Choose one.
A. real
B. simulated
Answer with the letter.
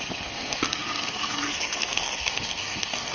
B